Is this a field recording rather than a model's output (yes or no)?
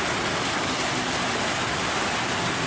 yes